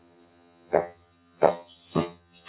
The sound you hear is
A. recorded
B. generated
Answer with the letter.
B